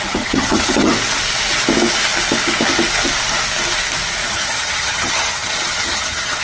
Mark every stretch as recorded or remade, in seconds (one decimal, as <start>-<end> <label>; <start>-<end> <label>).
0.0-0.9 remade; 0.9-4.3 recorded; 4.3-6.4 remade